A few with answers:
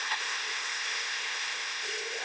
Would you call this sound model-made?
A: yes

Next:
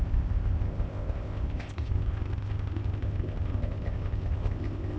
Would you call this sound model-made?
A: yes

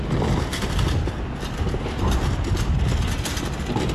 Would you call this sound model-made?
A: no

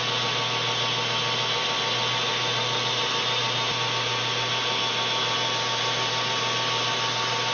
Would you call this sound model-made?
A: no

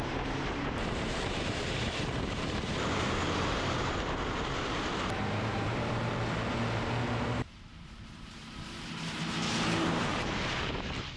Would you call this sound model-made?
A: yes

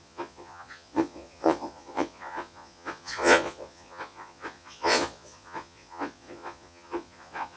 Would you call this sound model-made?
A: yes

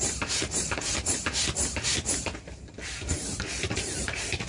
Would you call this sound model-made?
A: yes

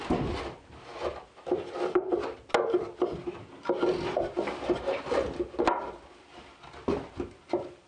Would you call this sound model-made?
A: no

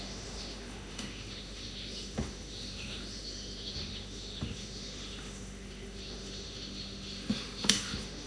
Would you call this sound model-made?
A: yes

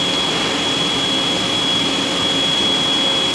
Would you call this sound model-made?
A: no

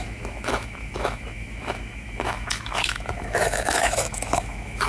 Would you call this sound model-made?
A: yes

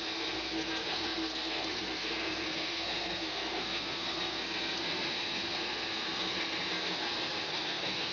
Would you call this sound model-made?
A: yes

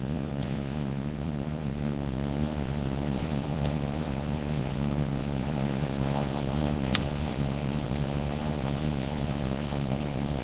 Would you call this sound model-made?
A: yes